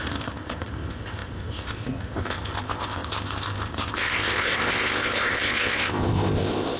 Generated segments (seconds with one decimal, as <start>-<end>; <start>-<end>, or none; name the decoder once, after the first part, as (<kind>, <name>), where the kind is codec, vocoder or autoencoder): 0.0-6.8 (codec, ZipCodec)